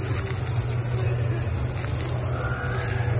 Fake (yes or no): no